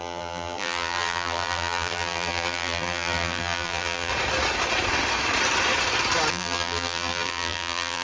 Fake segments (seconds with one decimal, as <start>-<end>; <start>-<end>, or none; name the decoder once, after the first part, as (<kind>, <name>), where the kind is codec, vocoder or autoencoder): 0.0-4.1 (vocoder, BigVGAN v2); 6.3-8.0